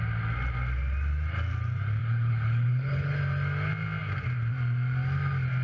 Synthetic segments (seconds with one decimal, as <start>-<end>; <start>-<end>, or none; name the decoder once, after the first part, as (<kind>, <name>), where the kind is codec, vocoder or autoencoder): 2.0-3.2 (codec, HILCodec)